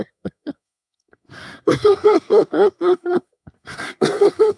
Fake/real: fake